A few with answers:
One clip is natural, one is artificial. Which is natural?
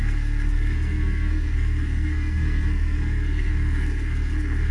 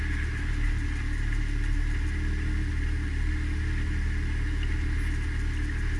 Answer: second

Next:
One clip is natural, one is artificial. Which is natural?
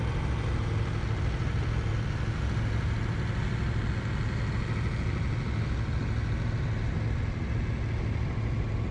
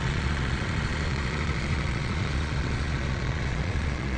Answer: first